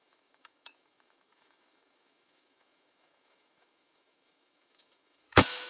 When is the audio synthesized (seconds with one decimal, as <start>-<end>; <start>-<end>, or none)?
0.0-5.7